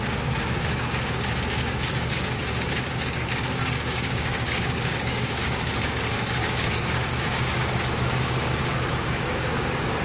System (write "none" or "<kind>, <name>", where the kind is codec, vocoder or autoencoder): codec, DAC